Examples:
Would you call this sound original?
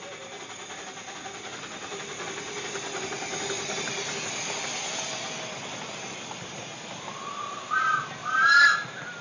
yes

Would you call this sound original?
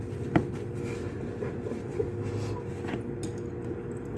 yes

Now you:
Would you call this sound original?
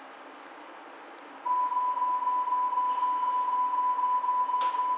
yes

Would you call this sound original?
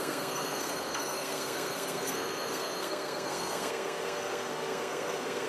no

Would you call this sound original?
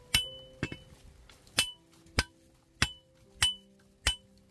yes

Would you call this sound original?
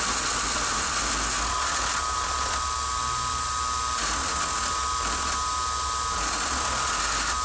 yes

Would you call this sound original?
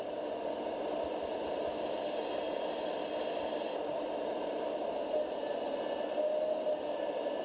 yes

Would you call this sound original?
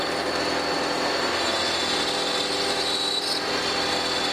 yes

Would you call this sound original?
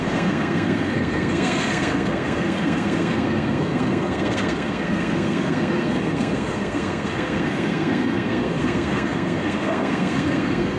no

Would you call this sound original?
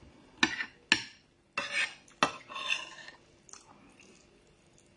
yes